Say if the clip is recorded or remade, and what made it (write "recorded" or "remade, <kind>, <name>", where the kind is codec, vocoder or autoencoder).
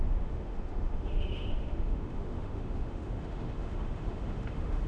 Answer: remade, autoencoder, DAC-VAE